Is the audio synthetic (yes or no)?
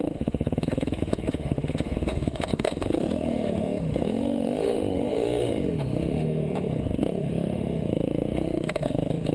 yes